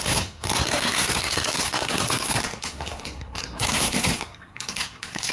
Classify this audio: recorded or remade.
remade